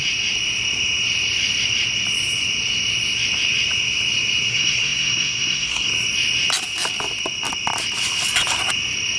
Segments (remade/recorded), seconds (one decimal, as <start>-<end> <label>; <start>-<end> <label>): 0.0-4.5 recorded; 4.5-5.9 remade; 5.9-9.2 recorded